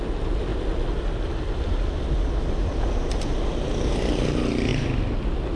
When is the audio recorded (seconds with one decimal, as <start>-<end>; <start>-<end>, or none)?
0.0-5.6